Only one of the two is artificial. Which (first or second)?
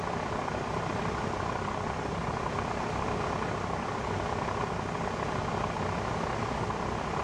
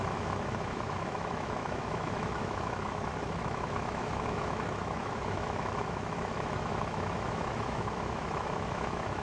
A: second